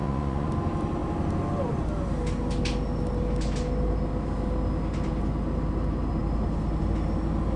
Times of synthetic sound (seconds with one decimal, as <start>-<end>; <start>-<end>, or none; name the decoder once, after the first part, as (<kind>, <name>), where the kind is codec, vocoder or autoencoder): 0.0-0.5 (vocoder, Vocos)